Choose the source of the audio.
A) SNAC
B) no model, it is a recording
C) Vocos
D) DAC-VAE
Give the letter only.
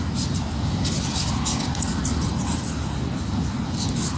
B